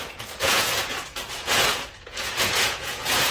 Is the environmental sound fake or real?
fake